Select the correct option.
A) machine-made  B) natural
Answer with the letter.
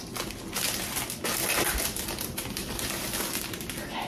B